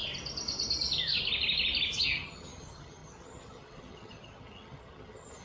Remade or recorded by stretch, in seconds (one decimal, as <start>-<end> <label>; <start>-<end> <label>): 0.0-2.0 recorded; 2.0-5.4 remade